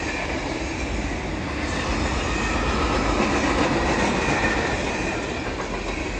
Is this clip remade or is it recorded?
recorded